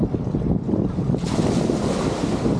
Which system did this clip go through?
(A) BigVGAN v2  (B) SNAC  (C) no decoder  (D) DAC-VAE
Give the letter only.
C